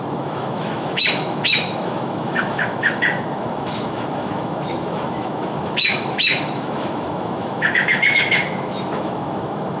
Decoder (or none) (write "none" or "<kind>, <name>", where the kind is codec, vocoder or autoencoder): autoencoder, DAC-VAE